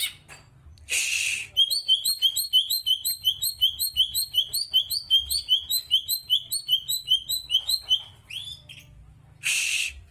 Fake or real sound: real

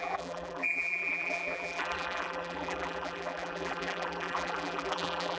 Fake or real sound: fake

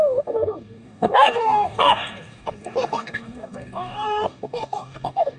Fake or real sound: fake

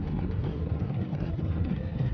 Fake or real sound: fake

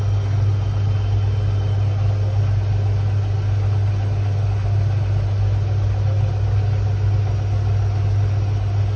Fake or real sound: real